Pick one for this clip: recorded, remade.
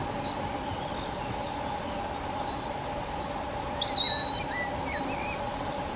recorded